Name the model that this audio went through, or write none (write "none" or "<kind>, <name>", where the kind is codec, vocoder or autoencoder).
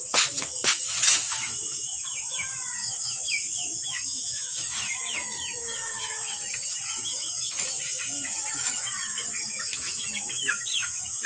autoencoder, DAC-VAE